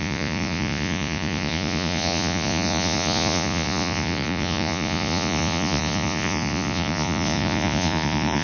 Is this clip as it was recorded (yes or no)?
no